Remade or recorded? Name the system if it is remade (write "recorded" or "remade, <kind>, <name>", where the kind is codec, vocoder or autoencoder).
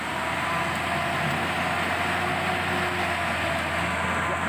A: recorded